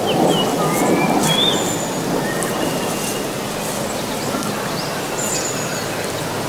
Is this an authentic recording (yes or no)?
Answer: yes